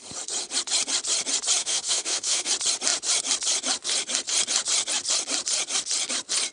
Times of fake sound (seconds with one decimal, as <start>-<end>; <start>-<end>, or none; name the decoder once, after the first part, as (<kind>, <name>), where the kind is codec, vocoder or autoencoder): 1.6-2.5 (autoencoder, DAC-VAE)

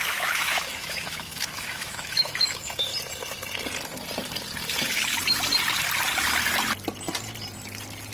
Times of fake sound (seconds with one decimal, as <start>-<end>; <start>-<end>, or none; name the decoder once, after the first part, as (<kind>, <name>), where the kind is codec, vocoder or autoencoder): 0.0-2.9 (autoencoder, DAC-VAE)

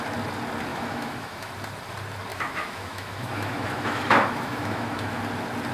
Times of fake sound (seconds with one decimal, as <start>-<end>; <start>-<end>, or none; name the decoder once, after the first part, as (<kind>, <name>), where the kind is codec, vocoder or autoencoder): 0.7-1.5 (autoencoder, DAC-VAE); 2.3-5.2

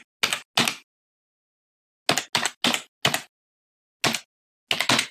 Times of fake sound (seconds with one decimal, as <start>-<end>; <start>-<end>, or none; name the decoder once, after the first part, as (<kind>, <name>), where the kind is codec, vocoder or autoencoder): none

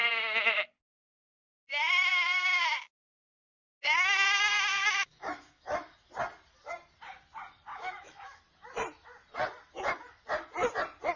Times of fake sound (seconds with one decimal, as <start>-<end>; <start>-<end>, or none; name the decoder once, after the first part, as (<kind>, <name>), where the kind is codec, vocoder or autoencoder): 2.1-2.7 (autoencoder, DAC-VAE); 4.7-6.1; 7.7-8.4

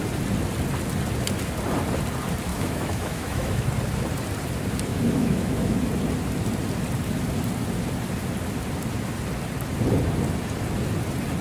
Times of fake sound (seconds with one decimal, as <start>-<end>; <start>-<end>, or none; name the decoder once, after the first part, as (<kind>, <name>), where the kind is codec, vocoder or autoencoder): 2.5-3.7 (autoencoder, DAC-VAE); 4.9-5.8

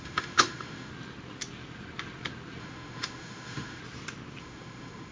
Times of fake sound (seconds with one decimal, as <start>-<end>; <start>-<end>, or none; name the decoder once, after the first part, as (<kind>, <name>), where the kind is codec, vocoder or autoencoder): 0.0-0.9 (autoencoder, DAC-VAE); 2.6-3.8; 4.4-5.1